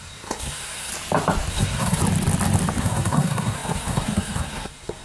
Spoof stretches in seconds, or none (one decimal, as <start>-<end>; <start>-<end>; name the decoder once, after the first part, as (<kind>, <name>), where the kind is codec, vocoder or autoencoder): 0.0-0.9 (codec, SNAC); 1.5-2.0; 2.8-5.0